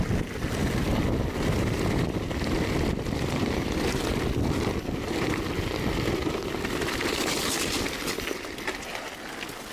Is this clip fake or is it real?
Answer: real